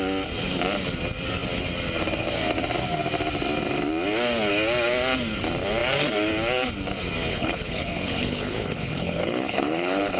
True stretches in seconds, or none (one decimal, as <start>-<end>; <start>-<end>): 0.0-7.3

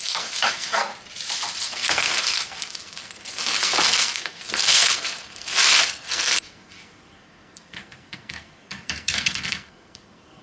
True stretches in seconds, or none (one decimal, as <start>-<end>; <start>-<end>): 0.9-1.6

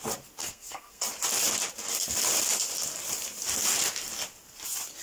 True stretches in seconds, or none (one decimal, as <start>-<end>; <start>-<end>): 0.0-0.4; 1.0-5.0

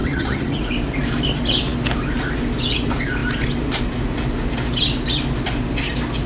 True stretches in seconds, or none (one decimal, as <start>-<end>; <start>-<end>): 0.6-6.3

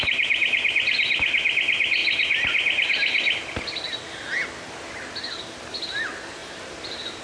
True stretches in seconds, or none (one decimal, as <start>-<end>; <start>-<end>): 0.0-6.4